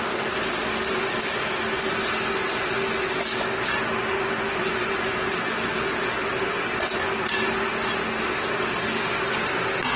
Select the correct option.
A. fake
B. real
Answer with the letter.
B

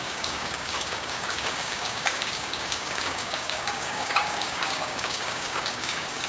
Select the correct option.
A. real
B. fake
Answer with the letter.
B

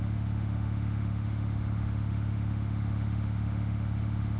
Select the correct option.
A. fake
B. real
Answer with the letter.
A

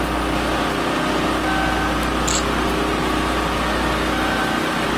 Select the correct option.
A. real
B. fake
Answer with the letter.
A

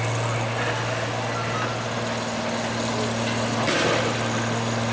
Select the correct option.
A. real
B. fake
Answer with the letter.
A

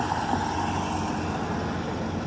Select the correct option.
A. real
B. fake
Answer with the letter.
A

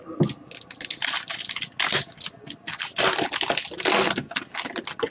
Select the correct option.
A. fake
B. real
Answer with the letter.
B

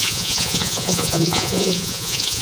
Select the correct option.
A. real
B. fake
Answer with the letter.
B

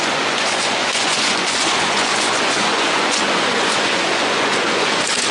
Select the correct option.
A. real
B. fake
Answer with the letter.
B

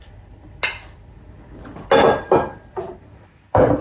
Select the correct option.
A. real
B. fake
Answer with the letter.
A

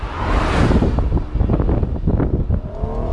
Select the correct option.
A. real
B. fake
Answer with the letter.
A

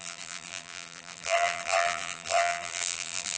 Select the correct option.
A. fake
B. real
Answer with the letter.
A